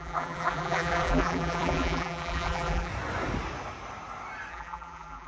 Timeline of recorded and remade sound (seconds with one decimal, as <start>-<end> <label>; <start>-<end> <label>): 0.0-2.9 remade; 2.9-4.5 recorded; 4.5-5.3 remade